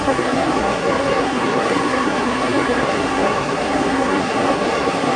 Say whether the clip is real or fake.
fake